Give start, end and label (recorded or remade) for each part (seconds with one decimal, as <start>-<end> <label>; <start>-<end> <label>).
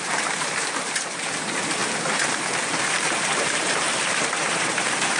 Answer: 0.0-1.8 remade; 1.8-2.9 recorded; 2.9-5.2 remade